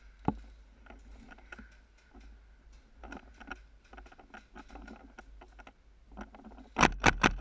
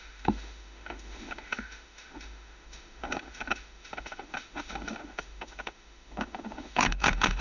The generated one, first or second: second